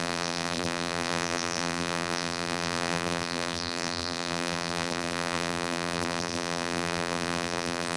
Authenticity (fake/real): fake